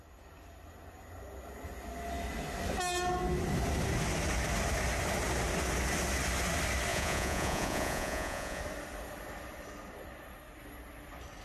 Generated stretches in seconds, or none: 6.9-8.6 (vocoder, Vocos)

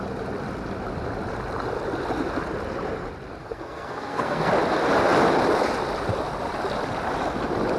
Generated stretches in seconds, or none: 3.4-4.5 (codec, SNAC)

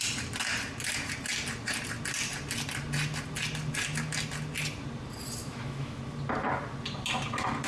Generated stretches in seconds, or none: 5.4-6.0 (autoencoder, DAC-VAE)